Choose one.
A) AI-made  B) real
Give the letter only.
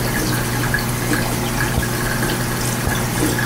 B